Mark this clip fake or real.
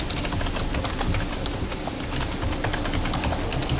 real